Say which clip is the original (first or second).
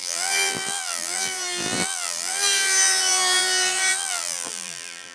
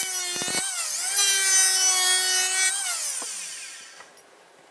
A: second